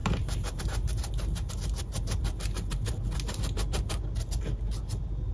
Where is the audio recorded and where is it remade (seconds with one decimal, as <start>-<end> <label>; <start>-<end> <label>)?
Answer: 0.0-1.5 remade; 1.5-5.3 recorded